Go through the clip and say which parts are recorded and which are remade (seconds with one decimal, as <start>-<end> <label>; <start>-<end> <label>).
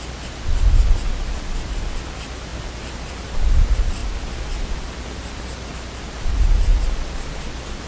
0.0-7.9 recorded